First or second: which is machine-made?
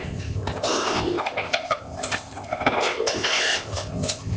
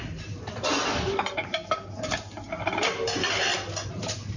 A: first